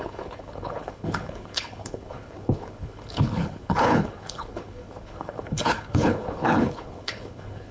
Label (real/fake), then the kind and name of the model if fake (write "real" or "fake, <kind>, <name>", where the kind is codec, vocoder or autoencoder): fake, codec, HILCodec